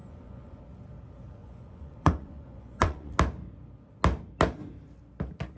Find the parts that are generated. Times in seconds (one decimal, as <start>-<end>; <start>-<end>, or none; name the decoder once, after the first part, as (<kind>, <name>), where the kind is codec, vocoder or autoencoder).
0.0-0.6 (vocoder, Vocos); 1.4-3.1